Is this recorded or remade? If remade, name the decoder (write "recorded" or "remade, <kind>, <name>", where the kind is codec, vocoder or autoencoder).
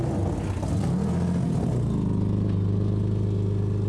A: recorded